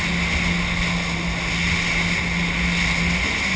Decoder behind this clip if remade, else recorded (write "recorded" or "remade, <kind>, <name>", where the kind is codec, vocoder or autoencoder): recorded